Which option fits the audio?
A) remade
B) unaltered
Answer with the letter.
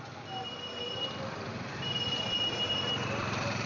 A